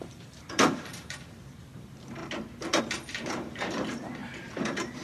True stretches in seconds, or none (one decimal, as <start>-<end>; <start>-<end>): 2.2-2.8